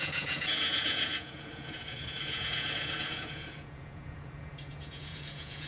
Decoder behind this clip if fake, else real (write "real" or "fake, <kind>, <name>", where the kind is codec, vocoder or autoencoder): fake, vocoder, Vocos